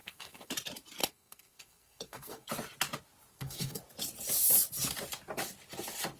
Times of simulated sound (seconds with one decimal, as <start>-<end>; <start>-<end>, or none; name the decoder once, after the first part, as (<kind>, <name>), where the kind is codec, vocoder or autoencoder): 0.0-0.5 (codec, SNAC); 1.0-2.5; 3.3-3.8